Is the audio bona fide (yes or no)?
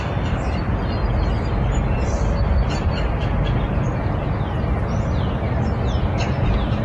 yes